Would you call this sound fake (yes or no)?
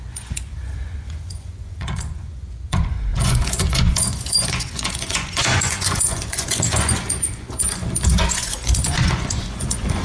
yes